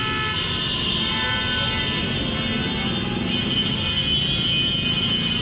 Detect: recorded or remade recorded